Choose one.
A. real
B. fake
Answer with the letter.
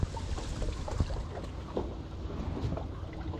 A